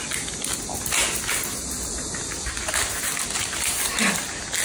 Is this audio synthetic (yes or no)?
no